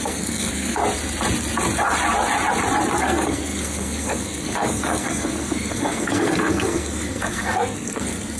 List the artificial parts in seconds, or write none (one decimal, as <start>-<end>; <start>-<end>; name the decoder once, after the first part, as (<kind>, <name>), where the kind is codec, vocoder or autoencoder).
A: 0.0-0.8 (codec, SNAC); 3.0-8.4